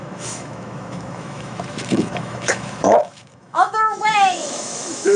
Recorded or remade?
remade